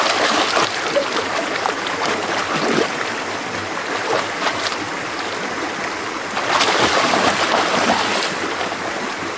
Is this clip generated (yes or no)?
no